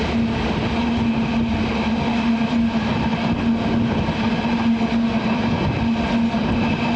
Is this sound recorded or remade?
recorded